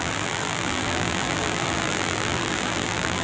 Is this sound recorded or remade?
remade